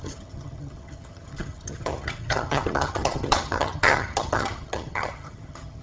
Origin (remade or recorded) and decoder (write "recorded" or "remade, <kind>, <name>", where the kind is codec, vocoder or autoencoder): remade, vocoder, HiFi-GAN